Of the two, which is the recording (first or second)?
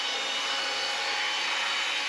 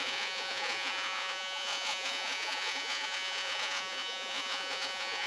first